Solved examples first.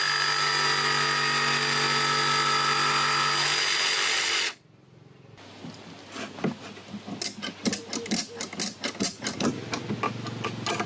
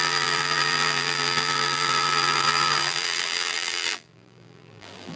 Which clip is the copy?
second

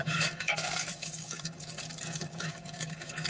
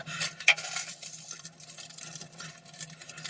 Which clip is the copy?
first